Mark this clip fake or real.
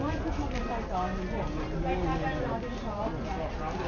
real